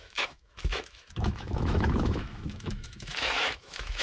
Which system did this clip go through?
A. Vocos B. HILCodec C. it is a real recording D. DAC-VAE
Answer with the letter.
D